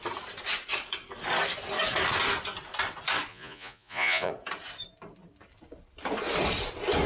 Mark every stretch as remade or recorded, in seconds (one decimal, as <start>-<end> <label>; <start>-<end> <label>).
0.0-3.3 recorded; 3.3-4.3 remade; 4.3-7.1 recorded